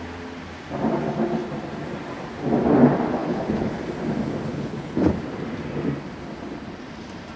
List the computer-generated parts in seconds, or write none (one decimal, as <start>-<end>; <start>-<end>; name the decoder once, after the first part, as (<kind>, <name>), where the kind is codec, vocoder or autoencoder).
3.2-3.8 (codec, HILCodec); 4.5-5.1